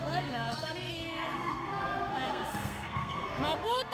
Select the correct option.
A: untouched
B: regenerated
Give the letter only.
B